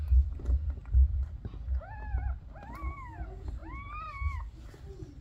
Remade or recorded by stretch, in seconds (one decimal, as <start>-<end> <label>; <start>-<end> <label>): 0.0-5.2 recorded